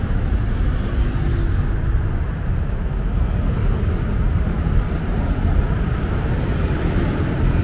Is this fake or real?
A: real